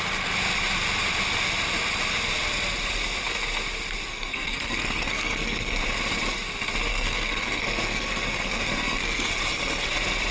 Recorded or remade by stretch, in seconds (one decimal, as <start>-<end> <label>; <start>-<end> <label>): 0.0-4.1 recorded; 4.1-5.8 remade; 5.8-6.9 recorded; 6.9-9.9 remade; 9.9-10.3 recorded